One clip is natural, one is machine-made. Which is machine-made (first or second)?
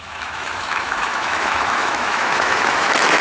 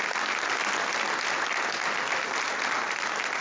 first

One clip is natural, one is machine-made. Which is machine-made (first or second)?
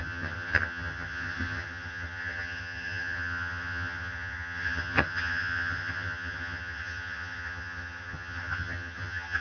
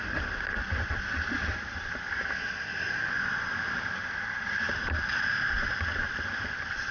first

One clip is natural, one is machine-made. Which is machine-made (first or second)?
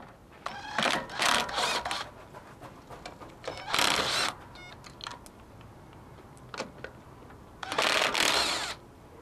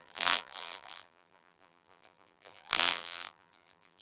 second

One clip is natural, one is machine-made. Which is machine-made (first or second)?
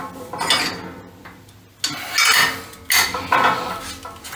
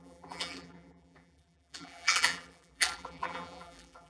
second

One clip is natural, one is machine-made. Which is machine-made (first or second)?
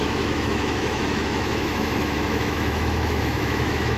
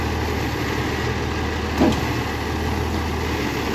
first